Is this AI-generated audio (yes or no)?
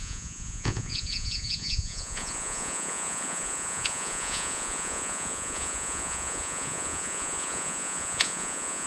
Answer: yes